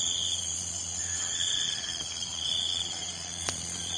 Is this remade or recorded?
remade